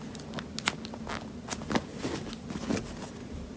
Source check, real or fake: real